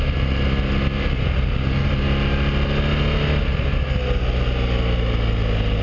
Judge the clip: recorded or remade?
recorded